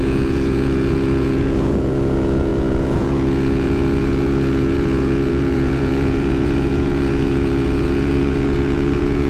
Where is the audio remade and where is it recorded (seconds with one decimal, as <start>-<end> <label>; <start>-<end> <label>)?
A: 0.0-9.3 remade